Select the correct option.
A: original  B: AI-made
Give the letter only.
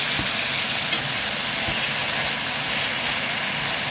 A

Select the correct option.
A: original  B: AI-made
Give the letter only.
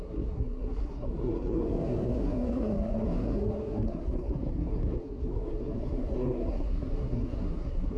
B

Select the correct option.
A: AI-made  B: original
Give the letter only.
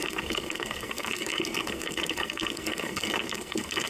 A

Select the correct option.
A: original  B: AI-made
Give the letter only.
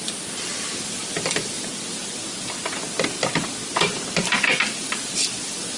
A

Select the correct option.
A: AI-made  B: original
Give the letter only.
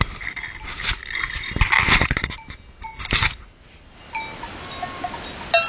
B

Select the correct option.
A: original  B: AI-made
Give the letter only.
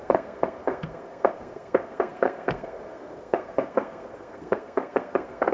B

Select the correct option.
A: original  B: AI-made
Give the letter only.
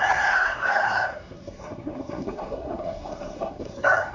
B